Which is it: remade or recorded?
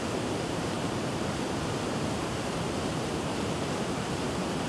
remade